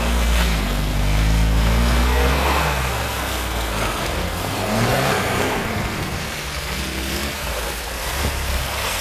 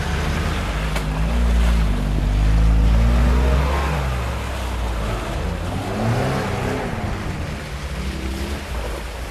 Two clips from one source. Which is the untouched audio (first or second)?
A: second